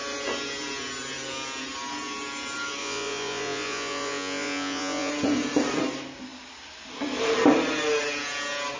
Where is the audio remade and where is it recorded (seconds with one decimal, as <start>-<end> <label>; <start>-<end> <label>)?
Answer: 0.0-2.8 recorded; 2.8-5.1 remade; 5.1-8.8 recorded